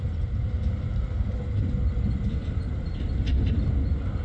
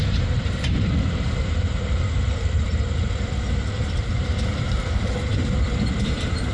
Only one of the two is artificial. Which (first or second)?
second